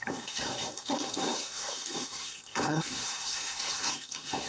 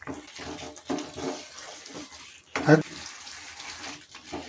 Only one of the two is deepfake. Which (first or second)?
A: first